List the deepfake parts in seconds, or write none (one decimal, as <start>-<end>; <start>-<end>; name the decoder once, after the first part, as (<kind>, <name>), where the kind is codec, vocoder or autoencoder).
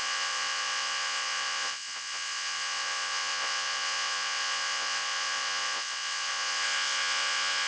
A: 0.0-7.7 (vocoder, Vocos)